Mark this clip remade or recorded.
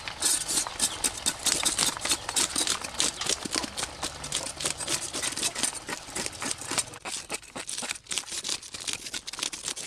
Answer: recorded